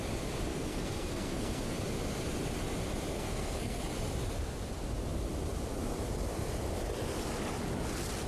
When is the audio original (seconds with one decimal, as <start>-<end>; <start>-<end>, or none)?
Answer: 0.0-0.5; 1.7-3.1; 3.8-8.3